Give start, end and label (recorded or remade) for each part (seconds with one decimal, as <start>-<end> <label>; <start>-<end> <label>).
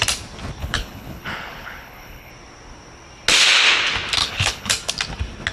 0.0-0.6 recorded; 0.6-2.3 remade; 2.3-4.2 recorded; 4.2-4.7 remade; 4.7-5.5 recorded